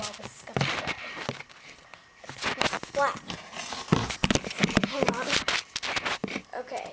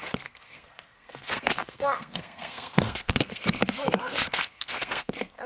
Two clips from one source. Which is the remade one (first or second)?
second